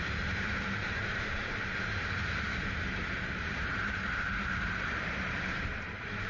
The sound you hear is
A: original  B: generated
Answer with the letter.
B